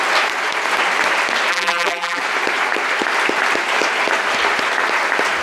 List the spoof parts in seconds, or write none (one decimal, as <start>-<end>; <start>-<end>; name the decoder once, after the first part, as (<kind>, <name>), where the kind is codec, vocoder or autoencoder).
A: 1.5-2.2 (vocoder, BigVGAN v2)